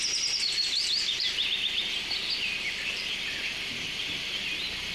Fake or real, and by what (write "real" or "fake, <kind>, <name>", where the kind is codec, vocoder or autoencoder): fake, vocoder, BigVGAN v2